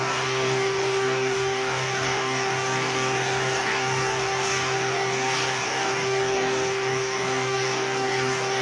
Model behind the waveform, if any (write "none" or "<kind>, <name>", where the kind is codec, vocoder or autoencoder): codec, DAC